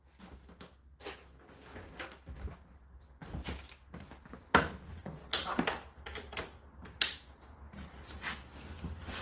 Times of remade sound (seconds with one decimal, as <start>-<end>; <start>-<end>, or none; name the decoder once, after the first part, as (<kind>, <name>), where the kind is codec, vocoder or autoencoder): none